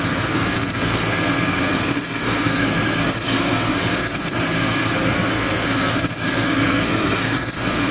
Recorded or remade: remade